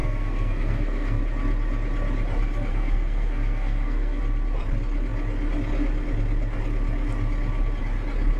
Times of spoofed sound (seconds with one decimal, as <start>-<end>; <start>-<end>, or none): 0.0-1.2; 2.7-4.2

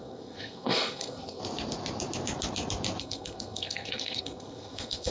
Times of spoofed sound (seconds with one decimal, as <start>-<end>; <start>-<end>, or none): 0.0-1.4; 3.0-5.1

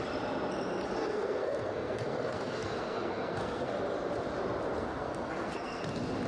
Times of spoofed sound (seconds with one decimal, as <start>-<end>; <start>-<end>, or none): 1.0-3.7; 4.7-5.8

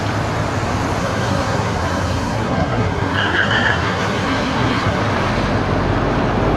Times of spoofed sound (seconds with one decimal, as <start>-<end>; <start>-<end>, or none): 1.0-5.0

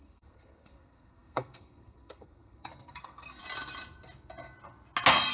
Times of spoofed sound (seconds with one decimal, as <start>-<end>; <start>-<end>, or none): 0.0-3.4

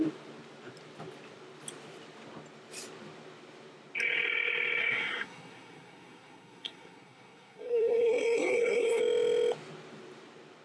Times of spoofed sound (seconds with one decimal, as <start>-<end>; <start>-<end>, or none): 4.8-9.0

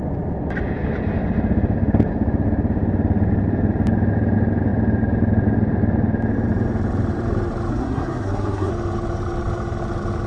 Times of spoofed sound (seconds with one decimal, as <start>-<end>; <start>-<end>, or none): 7.7-8.7

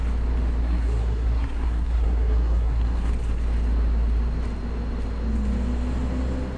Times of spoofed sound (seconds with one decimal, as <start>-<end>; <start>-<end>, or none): 0.6-3.1